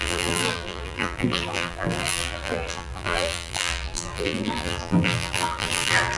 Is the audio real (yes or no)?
no